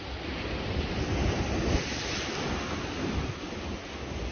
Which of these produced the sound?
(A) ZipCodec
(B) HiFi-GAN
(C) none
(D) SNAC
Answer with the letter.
C